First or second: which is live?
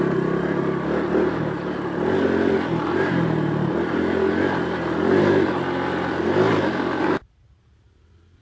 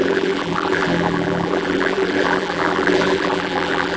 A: first